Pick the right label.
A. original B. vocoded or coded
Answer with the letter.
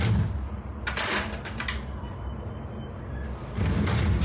A